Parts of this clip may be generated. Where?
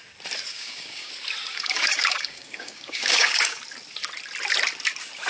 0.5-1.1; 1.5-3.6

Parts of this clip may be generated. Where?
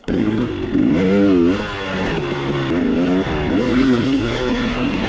0.0-0.5; 3.6-5.1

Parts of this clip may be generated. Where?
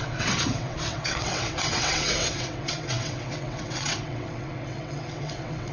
0.0-5.7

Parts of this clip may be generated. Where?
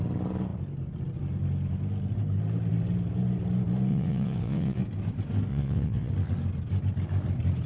3.9-4.8; 5.5-6.1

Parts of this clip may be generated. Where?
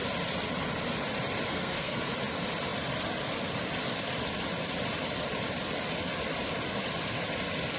1.5-2.1